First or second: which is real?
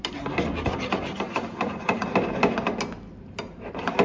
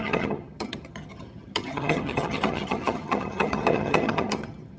first